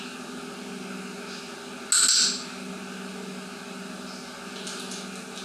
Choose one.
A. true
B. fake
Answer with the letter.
A